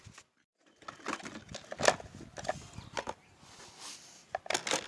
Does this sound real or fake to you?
real